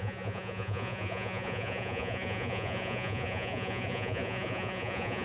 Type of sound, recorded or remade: remade